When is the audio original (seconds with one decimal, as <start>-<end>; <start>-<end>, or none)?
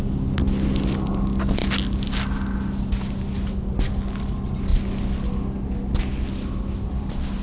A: 0.0-7.4